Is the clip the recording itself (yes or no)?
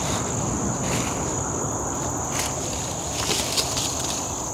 yes